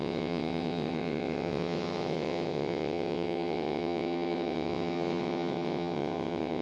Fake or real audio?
fake